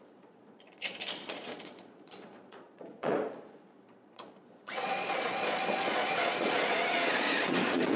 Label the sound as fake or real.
fake